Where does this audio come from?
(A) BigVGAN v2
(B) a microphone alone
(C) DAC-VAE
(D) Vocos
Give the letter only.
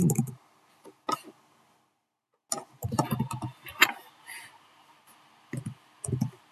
B